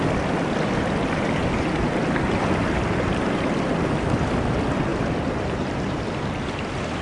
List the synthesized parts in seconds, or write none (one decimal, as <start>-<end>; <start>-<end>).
1.4-2.0